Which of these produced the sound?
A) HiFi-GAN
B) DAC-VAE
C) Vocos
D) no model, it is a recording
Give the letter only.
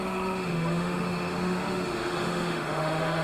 B